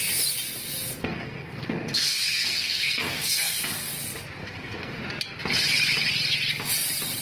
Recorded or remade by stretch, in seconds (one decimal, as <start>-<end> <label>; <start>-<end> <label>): 0.0-1.0 recorded; 1.0-3.9 remade; 3.9-4.4 recorded; 4.4-5.0 remade; 5.0-7.2 recorded